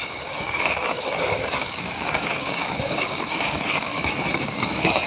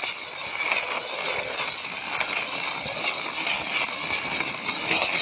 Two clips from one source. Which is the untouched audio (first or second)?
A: second